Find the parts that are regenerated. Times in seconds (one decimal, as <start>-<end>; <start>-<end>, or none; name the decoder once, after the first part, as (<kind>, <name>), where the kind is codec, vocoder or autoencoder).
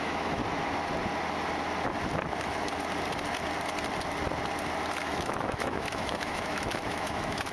0.0-0.4 (autoencoder, DAC-VAE); 4.9-7.5